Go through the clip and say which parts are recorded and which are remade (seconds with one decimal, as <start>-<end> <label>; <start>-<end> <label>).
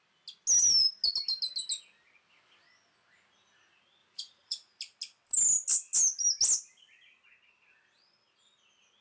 0.0-4.0 recorded; 4.0-4.8 remade; 4.8-9.0 recorded